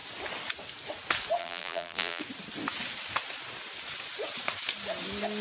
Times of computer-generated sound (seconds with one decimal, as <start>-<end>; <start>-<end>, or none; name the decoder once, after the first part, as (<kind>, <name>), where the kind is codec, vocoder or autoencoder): 1.4-2.2 (vocoder, BigVGAN v2)